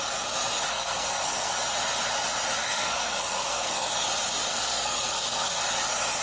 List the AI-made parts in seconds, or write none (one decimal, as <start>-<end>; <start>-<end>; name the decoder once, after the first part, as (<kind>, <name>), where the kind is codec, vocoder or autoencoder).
0.7-1.5 (codec, SNAC); 2.6-3.9; 4.5-5.6